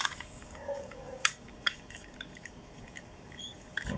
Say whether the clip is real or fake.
fake